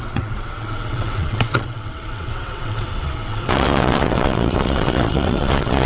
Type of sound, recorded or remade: remade